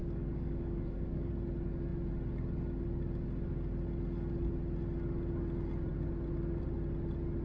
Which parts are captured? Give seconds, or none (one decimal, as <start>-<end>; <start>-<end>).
1.3-7.4